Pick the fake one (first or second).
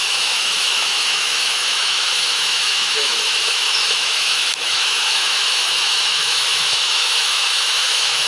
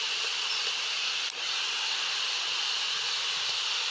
first